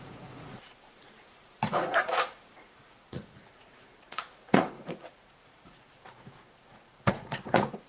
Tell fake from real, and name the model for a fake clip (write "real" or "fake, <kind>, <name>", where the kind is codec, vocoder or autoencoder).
fake, vocoder, Vocos